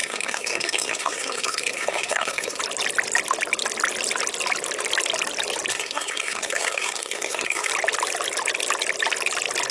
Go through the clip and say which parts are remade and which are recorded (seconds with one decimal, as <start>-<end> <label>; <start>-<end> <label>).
0.0-2.6 remade; 2.6-5.7 recorded; 5.7-7.7 remade; 7.7-9.7 recorded